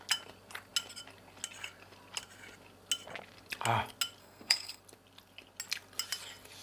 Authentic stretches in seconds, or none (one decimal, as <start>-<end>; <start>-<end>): 0.0-4.2; 4.8-6.6